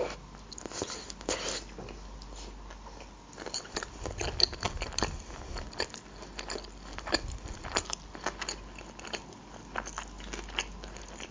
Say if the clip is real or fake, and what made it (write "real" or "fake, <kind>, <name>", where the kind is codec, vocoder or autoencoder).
real